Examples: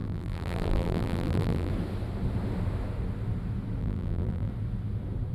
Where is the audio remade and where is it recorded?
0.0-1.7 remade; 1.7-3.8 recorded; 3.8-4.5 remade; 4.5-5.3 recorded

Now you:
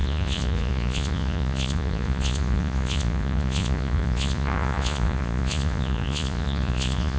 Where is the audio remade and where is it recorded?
0.0-7.2 remade